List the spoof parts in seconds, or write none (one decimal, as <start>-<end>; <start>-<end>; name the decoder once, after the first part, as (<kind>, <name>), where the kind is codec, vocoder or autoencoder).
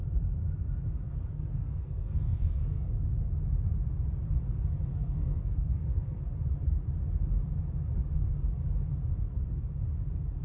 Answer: 1.3-3.1 (codec, SNAC); 4.9-6.2